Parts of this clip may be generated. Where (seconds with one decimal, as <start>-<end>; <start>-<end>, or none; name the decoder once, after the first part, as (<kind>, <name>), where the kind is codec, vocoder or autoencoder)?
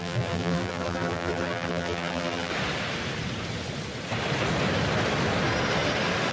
0.0-2.5 (vocoder, BigVGAN v2)